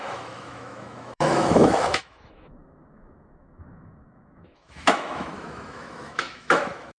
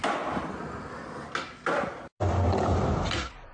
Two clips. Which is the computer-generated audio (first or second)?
first